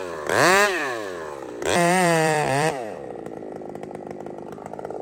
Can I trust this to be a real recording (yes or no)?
no